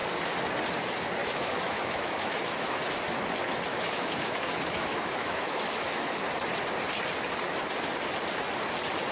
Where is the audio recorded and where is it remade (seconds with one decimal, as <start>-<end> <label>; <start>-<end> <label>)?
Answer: 0.0-1.2 recorded; 1.2-2.8 remade; 2.8-3.7 recorded; 3.7-6.2 remade; 6.2-9.1 recorded